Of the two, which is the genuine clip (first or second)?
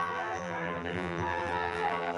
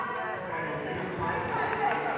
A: second